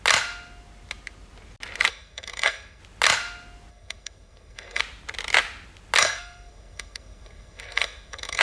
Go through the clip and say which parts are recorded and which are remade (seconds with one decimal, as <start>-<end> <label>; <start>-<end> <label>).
0.0-1.9 recorded; 1.9-2.8 remade; 2.8-3.7 recorded; 3.7-4.8 remade; 4.8-6.0 recorded; 6.0-8.4 remade